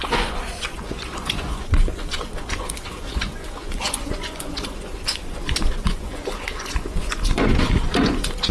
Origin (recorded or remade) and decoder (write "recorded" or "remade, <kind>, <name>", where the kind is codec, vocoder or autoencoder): remade, vocoder, Vocos